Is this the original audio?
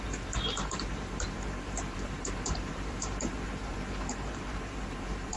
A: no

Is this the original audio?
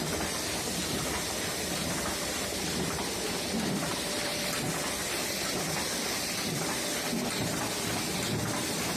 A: no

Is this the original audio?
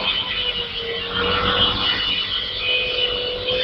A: yes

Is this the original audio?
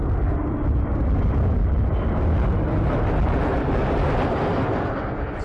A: yes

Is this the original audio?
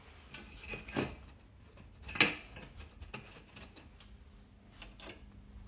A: yes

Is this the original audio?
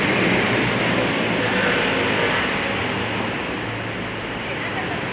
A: yes